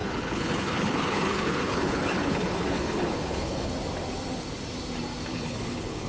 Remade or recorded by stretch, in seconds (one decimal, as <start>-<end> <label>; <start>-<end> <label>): 0.0-3.7 remade; 3.7-5.3 recorded; 5.3-6.1 remade